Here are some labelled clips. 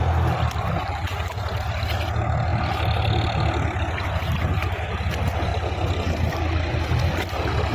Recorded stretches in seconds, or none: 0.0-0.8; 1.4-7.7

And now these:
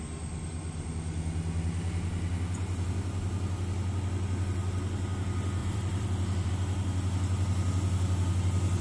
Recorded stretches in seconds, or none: 0.0-5.6; 6.5-8.8

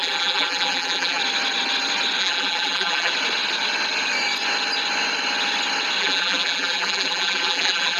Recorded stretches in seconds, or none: 1.2-2.2; 3.1-6.0